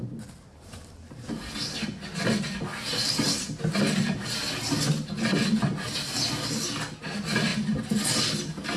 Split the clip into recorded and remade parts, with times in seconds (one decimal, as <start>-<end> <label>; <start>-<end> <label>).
0.0-8.8 recorded